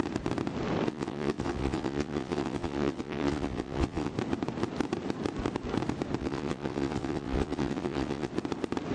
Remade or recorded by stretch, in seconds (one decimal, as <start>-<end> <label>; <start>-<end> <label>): 0.0-0.9 recorded; 0.9-4.1 remade; 4.1-6.2 recorded; 6.2-8.3 remade; 8.3-8.9 recorded